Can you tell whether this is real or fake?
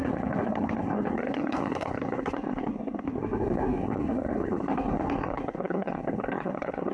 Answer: fake